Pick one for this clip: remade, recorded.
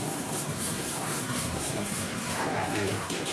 remade